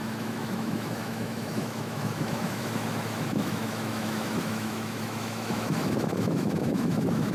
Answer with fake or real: fake